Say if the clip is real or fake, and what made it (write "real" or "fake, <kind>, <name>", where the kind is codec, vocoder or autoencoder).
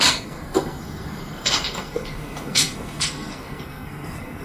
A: fake, codec, SNAC